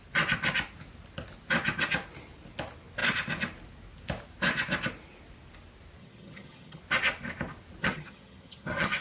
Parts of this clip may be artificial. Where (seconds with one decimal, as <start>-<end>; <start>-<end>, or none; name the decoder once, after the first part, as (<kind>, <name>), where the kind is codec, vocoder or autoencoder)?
6.0-6.8 (vocoder, HiFi-GAN); 7.8-9.0